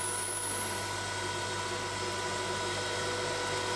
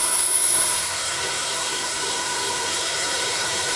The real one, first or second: first